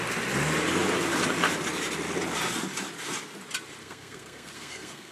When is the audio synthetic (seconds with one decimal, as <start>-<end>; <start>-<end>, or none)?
3.8-5.1